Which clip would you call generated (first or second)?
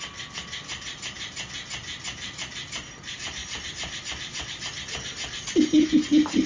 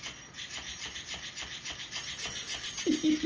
first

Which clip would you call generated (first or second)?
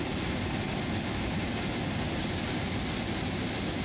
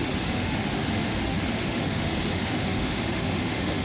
second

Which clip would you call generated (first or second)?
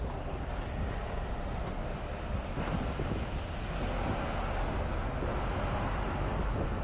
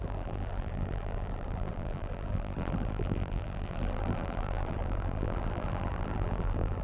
second